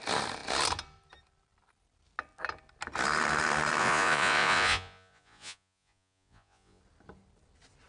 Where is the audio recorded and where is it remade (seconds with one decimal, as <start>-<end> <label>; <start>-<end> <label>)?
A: 0.0-3.8 recorded; 3.8-6.8 remade; 6.8-7.9 recorded